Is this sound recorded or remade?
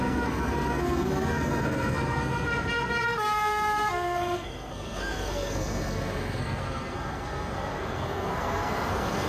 remade